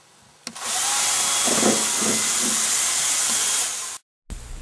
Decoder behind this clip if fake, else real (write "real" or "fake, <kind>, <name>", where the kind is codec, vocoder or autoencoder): real